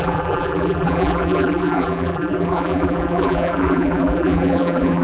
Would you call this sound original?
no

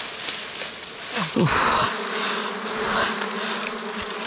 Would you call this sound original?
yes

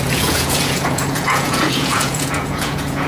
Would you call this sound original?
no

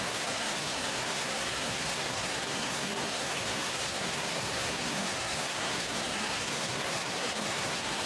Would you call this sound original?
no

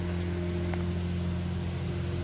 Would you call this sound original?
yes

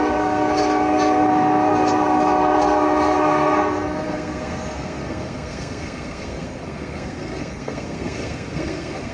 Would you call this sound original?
no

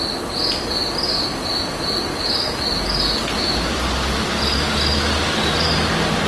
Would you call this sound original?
yes